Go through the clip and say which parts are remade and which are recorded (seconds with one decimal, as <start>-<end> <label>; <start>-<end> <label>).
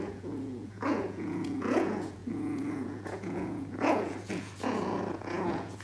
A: 0.0-5.8 remade